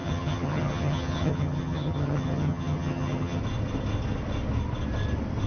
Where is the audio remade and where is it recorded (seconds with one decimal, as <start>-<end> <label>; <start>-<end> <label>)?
0.0-3.4 remade; 3.4-5.5 recorded